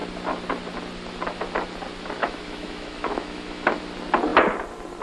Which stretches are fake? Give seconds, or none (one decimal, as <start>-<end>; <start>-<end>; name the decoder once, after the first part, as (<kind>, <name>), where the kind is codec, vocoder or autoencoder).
2.2-3.8 (autoencoder, DAC-VAE)